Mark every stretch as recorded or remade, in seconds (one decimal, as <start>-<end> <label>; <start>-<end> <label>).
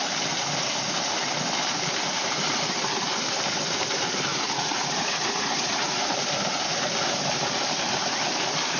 0.0-4.3 recorded; 4.3-6.0 remade; 6.0-8.8 recorded